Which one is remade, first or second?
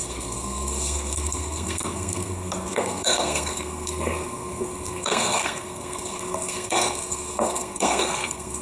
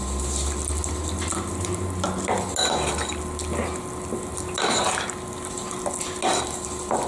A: first